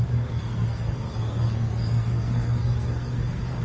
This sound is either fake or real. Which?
fake